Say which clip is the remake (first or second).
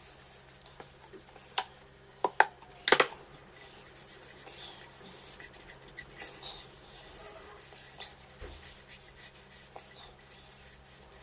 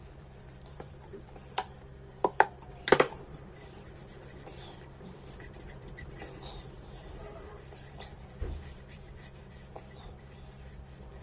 second